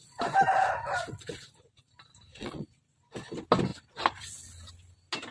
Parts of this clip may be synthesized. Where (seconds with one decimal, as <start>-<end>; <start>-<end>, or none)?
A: 2.3-2.8